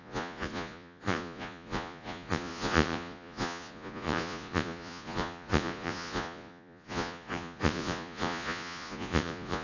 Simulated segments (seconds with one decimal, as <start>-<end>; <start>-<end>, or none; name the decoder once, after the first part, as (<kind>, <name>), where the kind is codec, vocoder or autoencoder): 0.0-9.6 (vocoder, Vocos)